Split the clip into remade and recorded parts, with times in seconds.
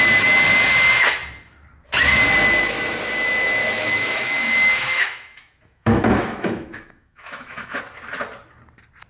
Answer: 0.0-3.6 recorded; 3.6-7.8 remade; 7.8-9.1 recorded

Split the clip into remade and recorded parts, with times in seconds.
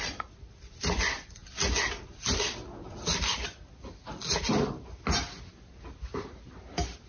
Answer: 0.0-7.1 recorded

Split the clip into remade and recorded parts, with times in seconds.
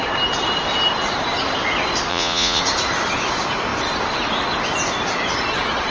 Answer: 0.0-2.1 recorded; 2.1-2.6 remade; 2.6-5.9 recorded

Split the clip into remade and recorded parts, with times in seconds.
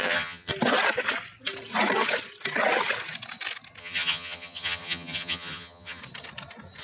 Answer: 0.0-0.5 remade; 0.5-3.8 recorded; 3.8-6.0 remade; 6.0-6.8 recorded